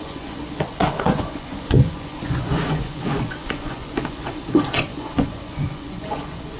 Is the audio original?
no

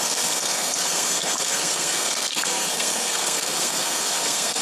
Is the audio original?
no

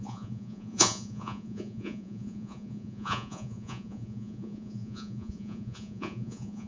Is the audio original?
no